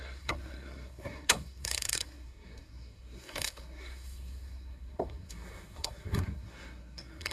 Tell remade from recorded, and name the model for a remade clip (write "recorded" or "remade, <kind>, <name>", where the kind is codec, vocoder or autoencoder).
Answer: remade, codec, SNAC